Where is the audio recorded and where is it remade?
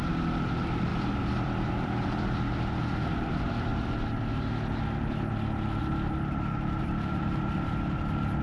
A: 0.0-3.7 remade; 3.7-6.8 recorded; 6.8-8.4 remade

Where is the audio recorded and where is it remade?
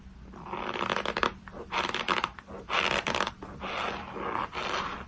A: 0.0-0.9 recorded; 0.9-3.3 remade; 3.3-5.1 recorded